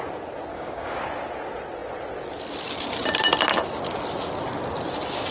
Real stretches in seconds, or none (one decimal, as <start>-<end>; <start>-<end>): 0.0-0.5; 1.0-5.3